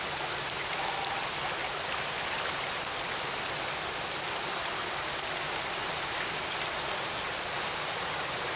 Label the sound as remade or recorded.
recorded